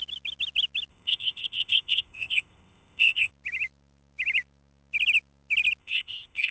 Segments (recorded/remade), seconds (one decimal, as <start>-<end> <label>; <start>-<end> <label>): 0.0-0.9 recorded; 0.9-3.3 remade; 3.3-5.8 recorded; 5.8-6.5 remade